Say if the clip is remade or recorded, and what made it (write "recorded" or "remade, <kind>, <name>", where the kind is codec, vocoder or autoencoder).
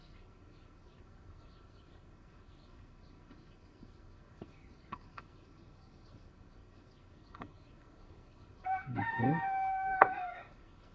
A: remade, codec, SNAC